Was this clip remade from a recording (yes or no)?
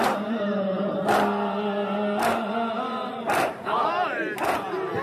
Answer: no